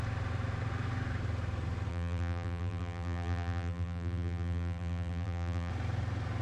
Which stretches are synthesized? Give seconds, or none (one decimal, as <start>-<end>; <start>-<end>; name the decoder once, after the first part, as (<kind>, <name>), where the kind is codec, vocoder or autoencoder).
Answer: 1.9-5.7 (vocoder, BigVGAN v2)